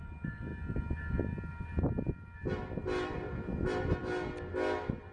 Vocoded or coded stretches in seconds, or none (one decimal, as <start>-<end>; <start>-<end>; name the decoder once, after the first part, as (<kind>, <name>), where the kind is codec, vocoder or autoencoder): none